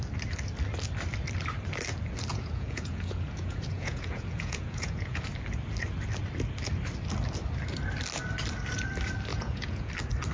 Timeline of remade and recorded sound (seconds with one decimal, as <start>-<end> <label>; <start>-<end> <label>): 0.0-2.3 recorded; 2.3-5.2 remade; 5.2-9.3 recorded; 9.3-9.9 remade; 9.9-10.3 recorded